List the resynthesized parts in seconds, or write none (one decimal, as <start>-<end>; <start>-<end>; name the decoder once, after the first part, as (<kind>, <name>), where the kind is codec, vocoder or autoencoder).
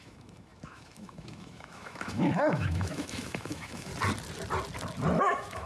0.0-3.9 (autoencoder, DAC-VAE); 5.2-5.7